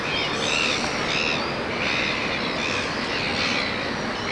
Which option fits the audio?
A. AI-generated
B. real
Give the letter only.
B